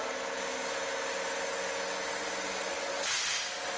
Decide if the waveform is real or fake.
real